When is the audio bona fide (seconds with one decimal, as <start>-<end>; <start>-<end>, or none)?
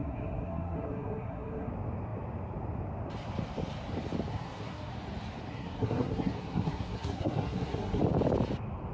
1.7-4.3; 4.9-5.5; 8.0-8.9